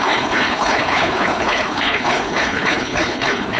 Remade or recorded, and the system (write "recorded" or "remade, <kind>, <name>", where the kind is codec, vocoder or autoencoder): remade, codec, HILCodec